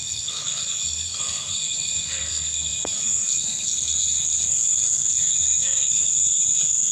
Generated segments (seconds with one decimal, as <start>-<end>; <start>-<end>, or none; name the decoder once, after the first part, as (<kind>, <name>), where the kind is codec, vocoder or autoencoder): 0.0-6.9 (codec, SNAC)